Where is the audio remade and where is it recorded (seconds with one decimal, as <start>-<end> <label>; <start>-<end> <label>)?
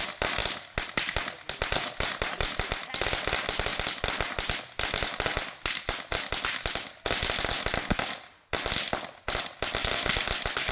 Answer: 0.0-10.7 recorded